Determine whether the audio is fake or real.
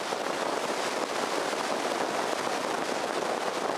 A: real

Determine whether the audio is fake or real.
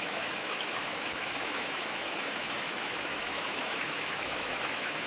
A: fake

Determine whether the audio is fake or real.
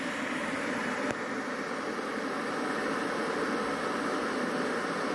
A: real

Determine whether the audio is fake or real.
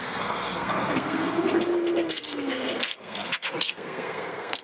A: fake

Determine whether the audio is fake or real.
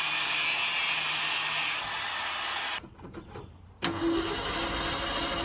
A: real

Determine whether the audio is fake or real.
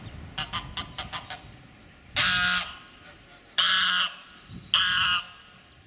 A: real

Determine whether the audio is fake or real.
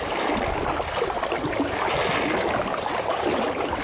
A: real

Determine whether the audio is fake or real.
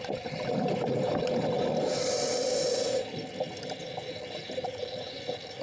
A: real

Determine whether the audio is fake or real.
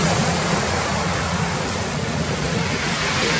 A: fake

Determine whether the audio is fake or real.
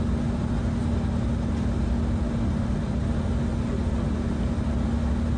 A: real